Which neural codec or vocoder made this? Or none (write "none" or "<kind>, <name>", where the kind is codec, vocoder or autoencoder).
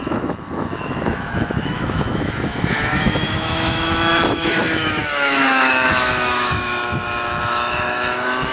autoencoder, DAC-VAE